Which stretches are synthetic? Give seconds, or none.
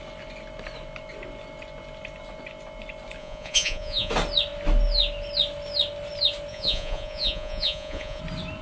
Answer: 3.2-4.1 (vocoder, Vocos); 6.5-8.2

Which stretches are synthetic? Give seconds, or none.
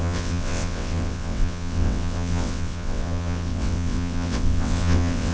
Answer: 0.0-5.3 (vocoder, WaveNeXt)